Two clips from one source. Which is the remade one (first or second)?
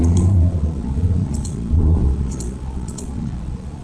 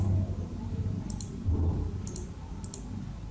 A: first